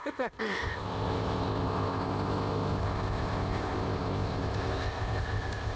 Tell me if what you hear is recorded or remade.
remade